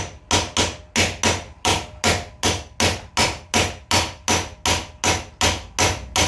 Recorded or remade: recorded